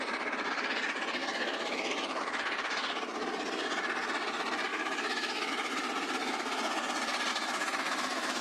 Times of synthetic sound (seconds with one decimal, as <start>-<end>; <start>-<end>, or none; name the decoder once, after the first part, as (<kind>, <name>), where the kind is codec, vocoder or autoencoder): 1.2-2.2 (autoencoder, DAC-VAE); 4.7-5.5; 7.3-8.4